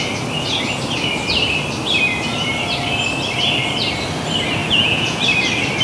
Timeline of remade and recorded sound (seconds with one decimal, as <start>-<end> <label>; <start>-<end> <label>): 0.0-4.6 recorded; 4.6-5.2 remade; 5.2-5.8 recorded